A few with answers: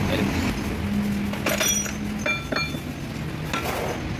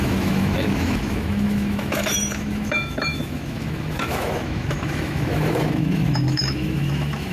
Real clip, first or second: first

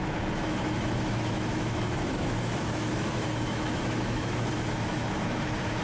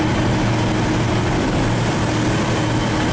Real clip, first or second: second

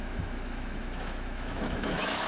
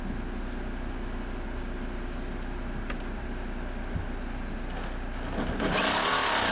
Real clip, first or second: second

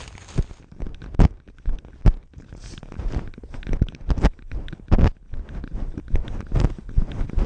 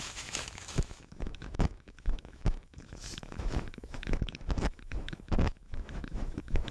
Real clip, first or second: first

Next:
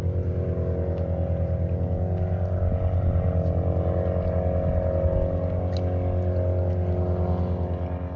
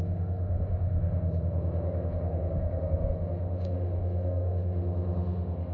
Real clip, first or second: first